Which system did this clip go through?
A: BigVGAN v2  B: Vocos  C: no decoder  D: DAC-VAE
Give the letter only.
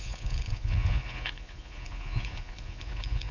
B